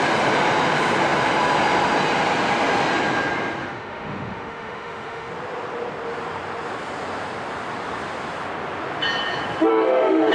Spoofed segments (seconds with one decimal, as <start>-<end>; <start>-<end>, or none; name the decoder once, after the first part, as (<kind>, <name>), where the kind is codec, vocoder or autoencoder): 3.6-5.3 (autoencoder, DAC-VAE); 9.7-10.3